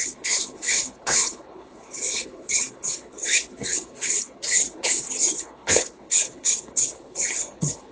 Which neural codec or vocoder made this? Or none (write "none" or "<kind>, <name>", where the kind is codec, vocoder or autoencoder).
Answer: codec, HILCodec